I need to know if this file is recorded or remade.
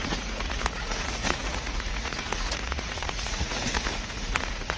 remade